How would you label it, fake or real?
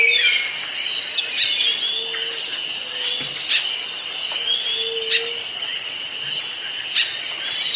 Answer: real